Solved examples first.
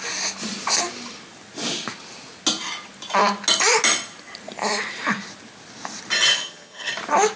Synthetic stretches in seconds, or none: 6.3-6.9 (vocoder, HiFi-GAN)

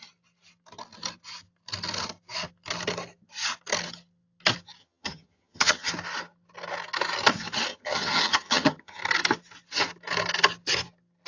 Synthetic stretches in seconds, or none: 4.8-5.9 (vocoder, HiFi-GAN); 7.7-9.0

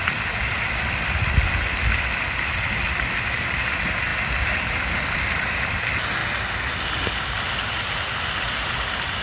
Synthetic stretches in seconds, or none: none